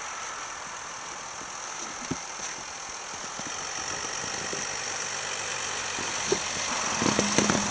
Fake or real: real